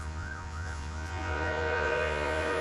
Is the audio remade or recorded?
remade